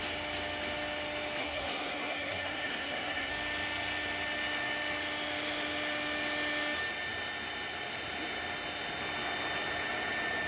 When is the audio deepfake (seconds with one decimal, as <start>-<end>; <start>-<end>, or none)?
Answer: 1.4-3.3